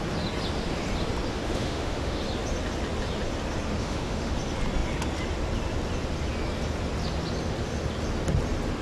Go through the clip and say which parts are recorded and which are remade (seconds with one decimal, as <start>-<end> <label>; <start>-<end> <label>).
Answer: 0.0-1.3 recorded; 1.3-2.2 remade; 2.2-3.8 recorded; 3.8-4.3 remade; 4.3-8.8 recorded